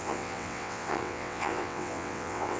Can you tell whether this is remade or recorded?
remade